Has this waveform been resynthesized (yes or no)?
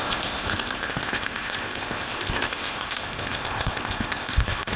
yes